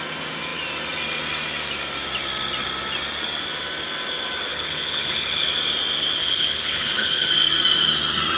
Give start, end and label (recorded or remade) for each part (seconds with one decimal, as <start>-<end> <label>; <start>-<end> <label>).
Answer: 0.0-4.5 recorded; 4.5-5.5 remade; 5.5-6.2 recorded; 6.2-7.3 remade; 7.3-8.4 recorded